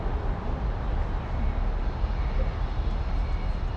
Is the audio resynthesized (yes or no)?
no